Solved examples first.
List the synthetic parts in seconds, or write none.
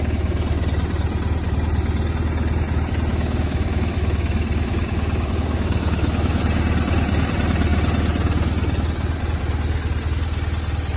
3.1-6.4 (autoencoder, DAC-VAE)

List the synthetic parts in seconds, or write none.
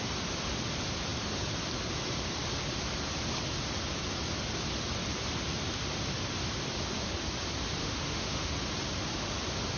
7.8-8.5 (autoencoder, DAC-VAE)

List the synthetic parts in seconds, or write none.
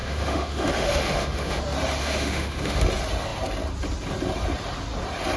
0.0-1.6 (autoencoder, DAC-VAE); 2.0-2.8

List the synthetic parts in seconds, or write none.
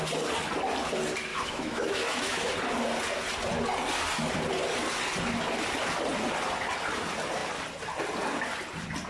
1.3-2.5 (autoencoder, DAC-VAE)